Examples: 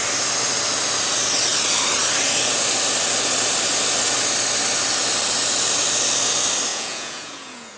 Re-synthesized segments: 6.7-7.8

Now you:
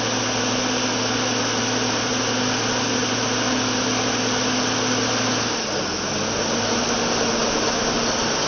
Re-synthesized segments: none